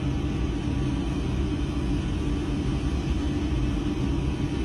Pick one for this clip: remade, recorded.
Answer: recorded